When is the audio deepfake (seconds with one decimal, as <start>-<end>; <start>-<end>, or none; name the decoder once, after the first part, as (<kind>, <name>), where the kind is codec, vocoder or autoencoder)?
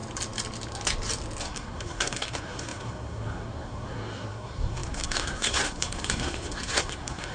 1.4-7.3 (codec, SNAC)